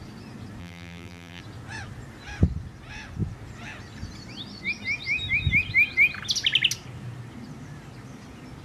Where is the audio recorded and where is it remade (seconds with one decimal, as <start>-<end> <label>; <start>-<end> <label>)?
0.0-0.6 recorded; 0.6-1.4 remade; 1.4-8.6 recorded